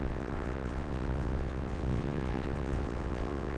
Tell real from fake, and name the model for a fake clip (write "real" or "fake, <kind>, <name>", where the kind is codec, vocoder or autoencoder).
fake, vocoder, WaveNeXt